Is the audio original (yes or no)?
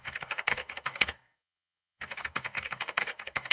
no